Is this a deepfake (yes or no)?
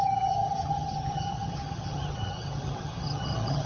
yes